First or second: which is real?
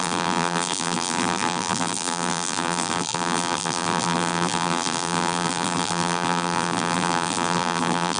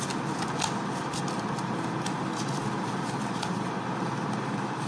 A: second